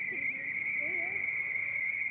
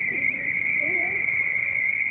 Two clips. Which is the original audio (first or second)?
first